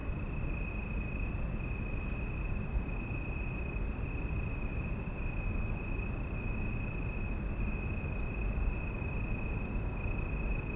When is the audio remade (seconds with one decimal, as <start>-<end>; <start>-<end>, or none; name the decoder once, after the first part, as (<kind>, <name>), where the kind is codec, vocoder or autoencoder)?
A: none

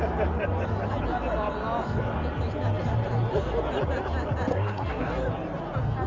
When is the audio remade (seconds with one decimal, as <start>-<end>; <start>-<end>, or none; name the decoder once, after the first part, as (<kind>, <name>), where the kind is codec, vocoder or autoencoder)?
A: 4.5-5.1 (codec, SNAC)

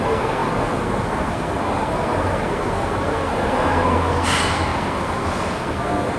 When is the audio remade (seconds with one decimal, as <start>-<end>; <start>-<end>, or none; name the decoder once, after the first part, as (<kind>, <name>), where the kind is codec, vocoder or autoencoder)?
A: 0.0-6.2 (codec, SNAC)

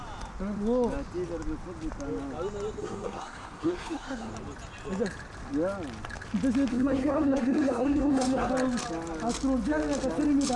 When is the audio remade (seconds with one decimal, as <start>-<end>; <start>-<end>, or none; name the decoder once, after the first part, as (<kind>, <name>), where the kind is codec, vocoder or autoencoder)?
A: 2.8-4.3 (codec, SNAC); 6.7-8.5

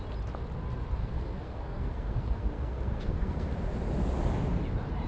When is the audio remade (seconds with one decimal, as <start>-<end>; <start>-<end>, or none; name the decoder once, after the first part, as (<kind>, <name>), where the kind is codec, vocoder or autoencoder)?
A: 1.0-3.5 (codec, SNAC)

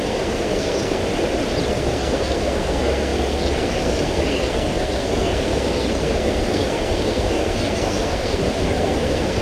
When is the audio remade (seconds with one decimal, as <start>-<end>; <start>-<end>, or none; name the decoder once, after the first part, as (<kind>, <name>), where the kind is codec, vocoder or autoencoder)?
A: 0.0-1.0 (codec, SNAC); 1.7-9.4